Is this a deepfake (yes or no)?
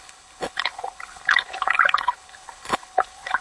yes